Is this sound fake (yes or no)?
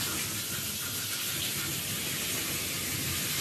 no